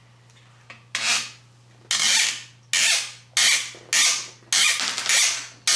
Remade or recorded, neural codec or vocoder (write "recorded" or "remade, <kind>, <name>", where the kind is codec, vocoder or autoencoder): recorded